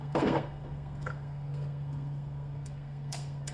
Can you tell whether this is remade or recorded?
remade